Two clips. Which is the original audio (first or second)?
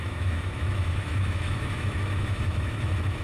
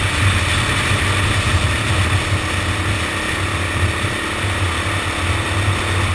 second